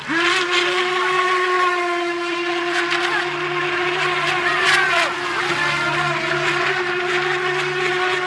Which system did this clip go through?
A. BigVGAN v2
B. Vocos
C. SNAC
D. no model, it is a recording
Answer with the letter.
D